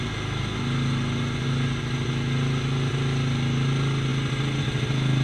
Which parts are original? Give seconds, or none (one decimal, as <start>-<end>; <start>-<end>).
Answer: 0.0-5.2